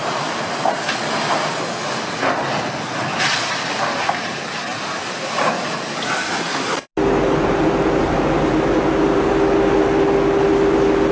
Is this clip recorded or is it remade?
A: recorded